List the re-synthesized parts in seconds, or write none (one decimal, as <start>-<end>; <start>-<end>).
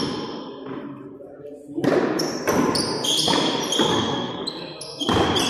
3.9-4.4